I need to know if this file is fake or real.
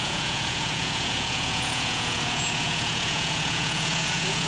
fake